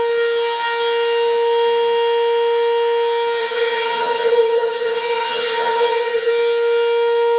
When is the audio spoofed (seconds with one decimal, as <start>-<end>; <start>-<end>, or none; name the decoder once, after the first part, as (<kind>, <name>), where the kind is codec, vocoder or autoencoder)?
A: 3.4-6.3 (vocoder, HiFi-GAN)